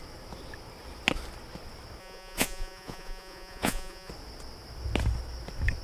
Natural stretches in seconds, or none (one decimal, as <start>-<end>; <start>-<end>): 0.0-2.0; 4.1-5.8